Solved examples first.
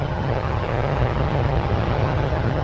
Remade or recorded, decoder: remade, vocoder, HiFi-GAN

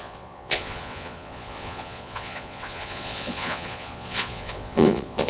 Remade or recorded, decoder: remade, vocoder, Vocos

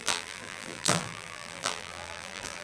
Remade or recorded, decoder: remade, vocoder, BigVGAN v2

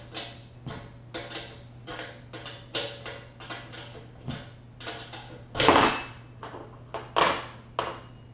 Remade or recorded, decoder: recorded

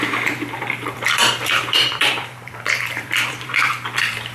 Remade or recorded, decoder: remade, vocoder, BigVGAN v2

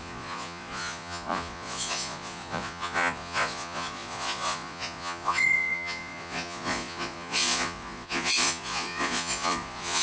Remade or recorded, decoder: remade, vocoder, Vocos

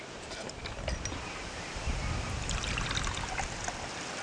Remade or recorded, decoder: recorded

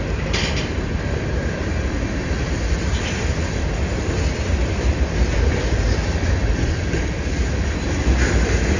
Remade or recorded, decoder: remade, vocoder, BigVGAN v2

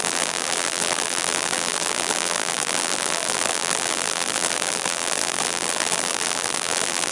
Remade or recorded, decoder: remade, vocoder, BigVGAN v2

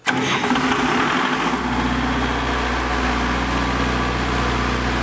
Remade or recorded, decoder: recorded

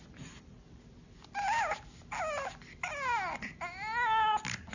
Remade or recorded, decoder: recorded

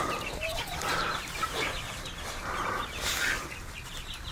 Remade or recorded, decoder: remade, vocoder, BigVGAN v2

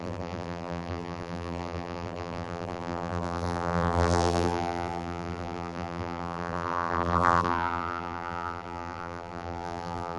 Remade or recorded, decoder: remade, vocoder, BigVGAN v2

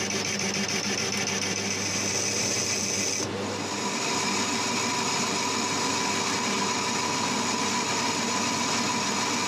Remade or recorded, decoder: recorded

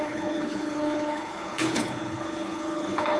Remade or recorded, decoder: remade, codec, HILCodec